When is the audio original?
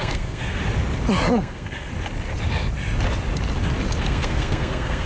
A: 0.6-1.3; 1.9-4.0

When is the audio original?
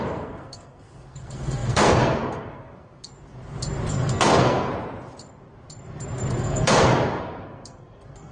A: 3.1-3.9; 4.7-6.4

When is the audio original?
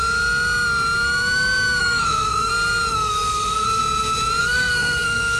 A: 0.0-1.8; 2.5-2.9; 3.8-4.4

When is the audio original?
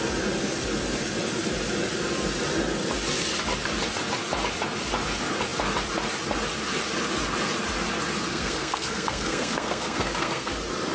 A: 0.0-8.3; 10.5-10.9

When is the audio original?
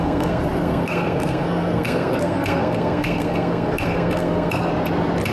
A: 4.7-5.3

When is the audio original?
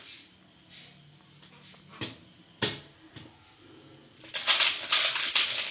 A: 0.0-5.7